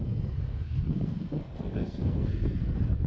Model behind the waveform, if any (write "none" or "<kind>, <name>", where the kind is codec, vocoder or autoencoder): codec, SNAC